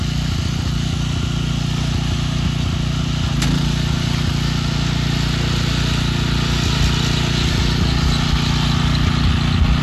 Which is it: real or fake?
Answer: real